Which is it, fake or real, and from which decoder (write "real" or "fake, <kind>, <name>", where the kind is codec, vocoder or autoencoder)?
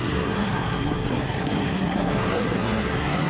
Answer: fake, codec, SNAC